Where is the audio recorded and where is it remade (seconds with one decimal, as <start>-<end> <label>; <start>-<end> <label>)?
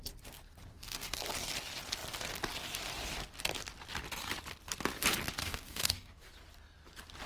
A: 0.0-0.7 recorded; 0.7-1.2 remade; 1.2-5.4 recorded; 5.4-6.3 remade; 6.3-7.3 recorded